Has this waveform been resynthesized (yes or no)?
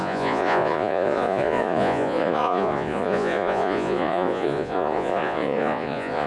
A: yes